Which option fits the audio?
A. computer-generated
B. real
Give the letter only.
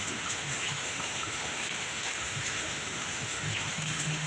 A